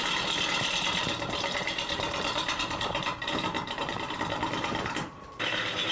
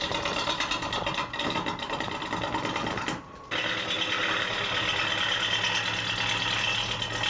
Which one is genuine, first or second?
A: second